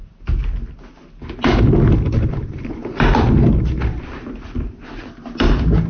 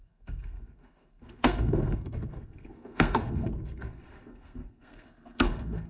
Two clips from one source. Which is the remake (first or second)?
second